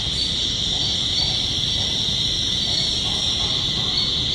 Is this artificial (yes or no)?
no